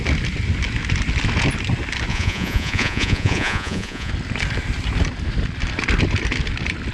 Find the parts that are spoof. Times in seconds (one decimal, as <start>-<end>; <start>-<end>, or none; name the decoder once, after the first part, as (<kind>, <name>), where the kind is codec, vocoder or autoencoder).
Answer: 2.1-4.1 (vocoder, Vocos)